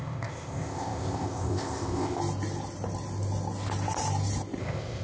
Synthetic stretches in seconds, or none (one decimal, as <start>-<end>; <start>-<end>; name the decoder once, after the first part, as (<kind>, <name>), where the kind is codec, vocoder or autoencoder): 0.0-2.2 (codec, ZipCodec); 4.6-5.0